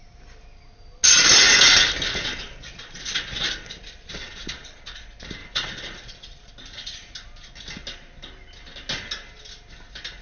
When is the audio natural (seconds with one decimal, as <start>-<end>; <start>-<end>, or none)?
0.0-2.4; 5.0-5.4; 6.5-10.2